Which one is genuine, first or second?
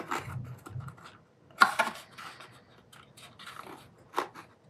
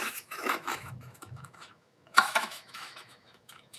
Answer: first